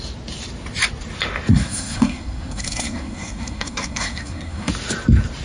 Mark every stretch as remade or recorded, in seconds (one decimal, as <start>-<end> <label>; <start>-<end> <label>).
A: 0.0-1.5 recorded; 1.5-4.7 remade; 4.7-5.4 recorded